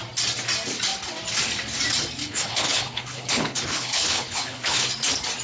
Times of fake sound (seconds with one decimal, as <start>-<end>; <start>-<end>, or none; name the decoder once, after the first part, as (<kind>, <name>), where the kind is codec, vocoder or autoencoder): 2.2-4.9 (codec, HILCodec)